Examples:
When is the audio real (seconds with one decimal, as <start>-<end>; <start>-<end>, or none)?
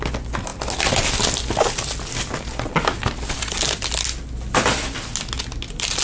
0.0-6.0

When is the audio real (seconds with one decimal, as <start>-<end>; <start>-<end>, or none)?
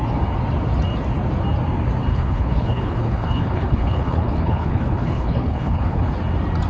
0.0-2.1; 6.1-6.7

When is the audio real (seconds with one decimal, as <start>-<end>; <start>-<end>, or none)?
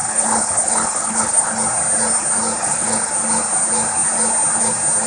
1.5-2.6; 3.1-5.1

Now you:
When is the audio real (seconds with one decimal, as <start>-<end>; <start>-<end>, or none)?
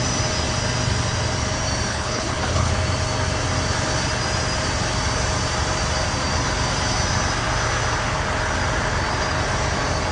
0.0-1.9; 2.7-10.1